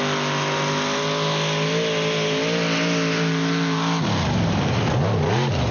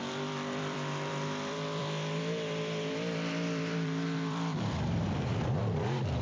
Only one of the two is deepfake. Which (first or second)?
second